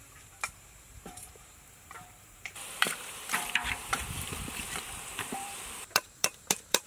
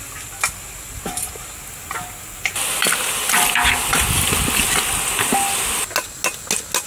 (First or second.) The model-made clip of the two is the first